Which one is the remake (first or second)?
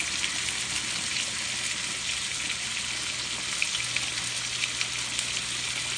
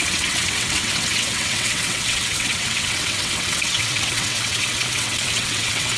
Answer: second